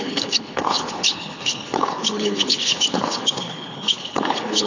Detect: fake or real fake